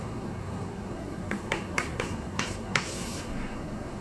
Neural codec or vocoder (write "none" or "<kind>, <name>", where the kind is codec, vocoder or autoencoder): codec, SNAC